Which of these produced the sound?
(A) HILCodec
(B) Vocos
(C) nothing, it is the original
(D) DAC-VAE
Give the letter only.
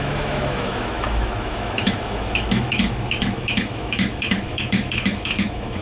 D